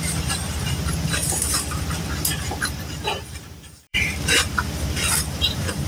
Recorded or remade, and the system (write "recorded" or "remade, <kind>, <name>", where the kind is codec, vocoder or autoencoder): remade, vocoder, BigVGAN v2